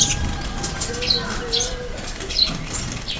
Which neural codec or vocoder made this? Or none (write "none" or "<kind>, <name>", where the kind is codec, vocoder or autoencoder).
none